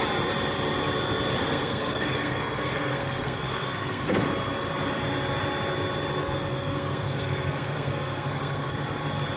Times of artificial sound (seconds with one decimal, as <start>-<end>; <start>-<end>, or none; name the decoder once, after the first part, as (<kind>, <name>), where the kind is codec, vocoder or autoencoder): 1.4-4.2 (codec, SNAC); 6.2-8.7